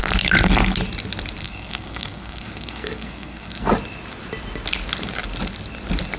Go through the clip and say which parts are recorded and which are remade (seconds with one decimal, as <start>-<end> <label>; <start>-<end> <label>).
0.0-1.4 recorded; 1.4-3.7 remade; 3.7-6.2 recorded